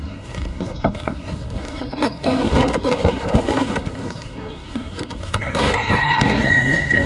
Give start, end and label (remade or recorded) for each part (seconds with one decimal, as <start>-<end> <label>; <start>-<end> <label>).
0.0-7.1 remade